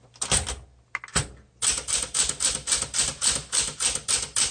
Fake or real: real